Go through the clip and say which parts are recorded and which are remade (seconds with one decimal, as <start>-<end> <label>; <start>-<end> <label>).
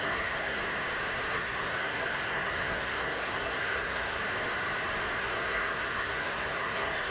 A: 0.0-0.6 remade; 0.6-1.3 recorded; 1.3-4.2 remade; 4.2-5.2 recorded; 5.2-7.1 remade